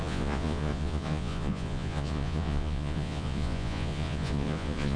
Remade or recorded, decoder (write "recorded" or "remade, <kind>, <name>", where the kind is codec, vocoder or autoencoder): remade, vocoder, Vocos